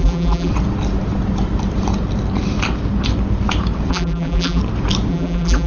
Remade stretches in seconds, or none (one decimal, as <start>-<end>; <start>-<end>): 0.0-0.5; 3.9-4.6; 5.1-5.7